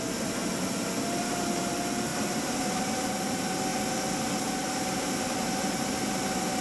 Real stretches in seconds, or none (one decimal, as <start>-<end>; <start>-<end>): 0.0-2.1; 3.3-6.6